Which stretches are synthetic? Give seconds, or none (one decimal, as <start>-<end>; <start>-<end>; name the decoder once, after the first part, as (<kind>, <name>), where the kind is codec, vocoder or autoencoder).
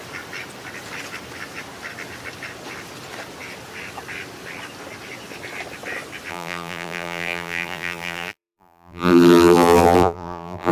6.3-10.7 (vocoder, BigVGAN v2)